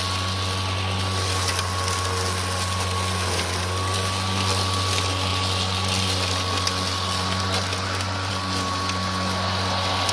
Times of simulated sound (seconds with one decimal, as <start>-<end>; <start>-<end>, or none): none